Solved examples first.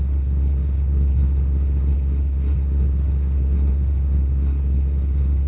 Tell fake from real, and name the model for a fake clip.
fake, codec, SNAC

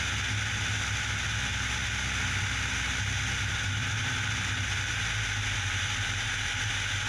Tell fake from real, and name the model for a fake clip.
real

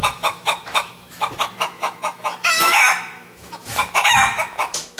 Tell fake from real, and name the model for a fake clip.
fake, autoencoder, DAC-VAE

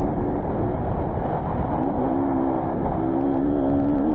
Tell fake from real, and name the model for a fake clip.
real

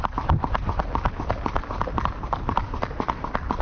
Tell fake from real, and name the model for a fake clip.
real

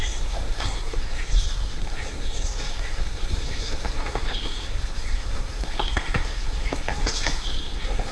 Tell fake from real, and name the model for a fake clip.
fake, codec, SNAC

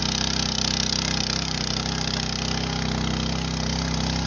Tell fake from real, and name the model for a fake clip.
real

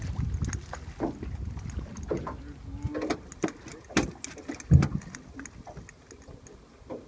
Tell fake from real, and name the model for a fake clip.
real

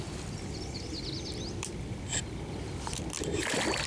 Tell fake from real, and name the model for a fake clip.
real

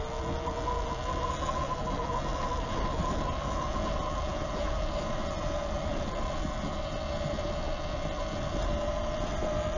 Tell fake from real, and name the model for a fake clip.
real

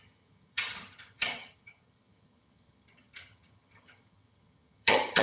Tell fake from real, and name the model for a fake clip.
fake, vocoder, HiFi-GAN